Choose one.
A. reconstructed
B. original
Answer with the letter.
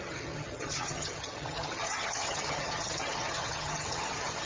A